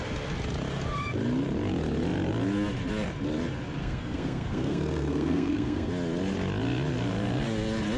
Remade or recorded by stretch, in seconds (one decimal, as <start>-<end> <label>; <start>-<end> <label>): 0.0-3.8 recorded; 3.8-5.9 remade; 5.9-8.0 recorded